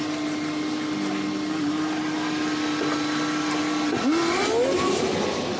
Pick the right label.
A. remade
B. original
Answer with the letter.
B